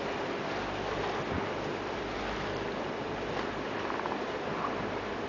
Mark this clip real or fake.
real